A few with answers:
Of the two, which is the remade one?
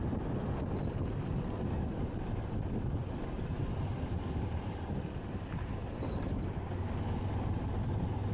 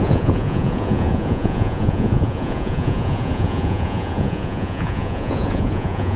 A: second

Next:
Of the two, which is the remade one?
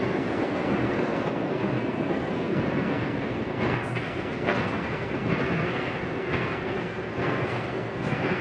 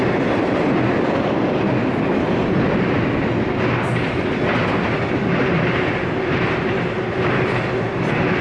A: first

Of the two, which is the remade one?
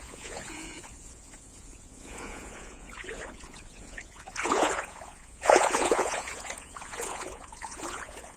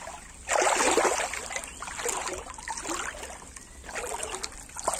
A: first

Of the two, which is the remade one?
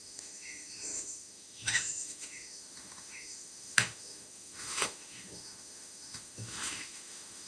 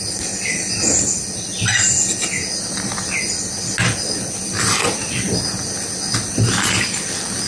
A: first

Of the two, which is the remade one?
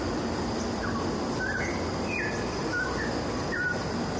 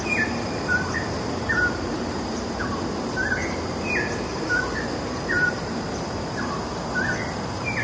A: second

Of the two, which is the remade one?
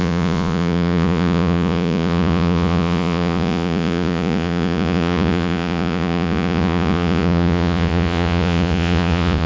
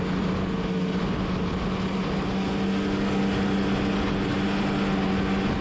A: first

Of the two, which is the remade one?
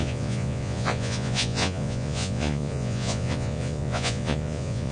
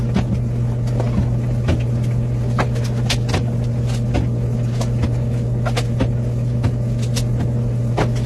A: first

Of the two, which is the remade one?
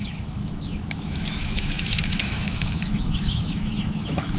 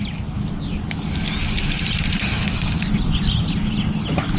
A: first